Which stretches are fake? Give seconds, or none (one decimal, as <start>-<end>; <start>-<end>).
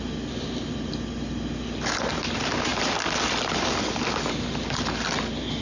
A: none